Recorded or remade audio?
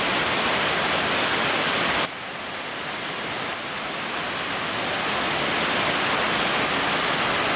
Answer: recorded